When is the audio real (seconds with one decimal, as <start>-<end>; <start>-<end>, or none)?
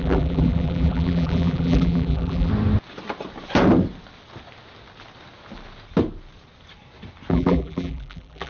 2.5-7.3